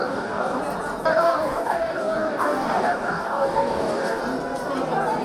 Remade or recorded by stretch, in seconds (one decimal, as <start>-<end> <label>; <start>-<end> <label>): 0.0-0.6 remade; 0.6-1.1 recorded; 1.1-4.2 remade; 4.2-5.2 recorded